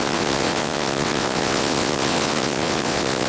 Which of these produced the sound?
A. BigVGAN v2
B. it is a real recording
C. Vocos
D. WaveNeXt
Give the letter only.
D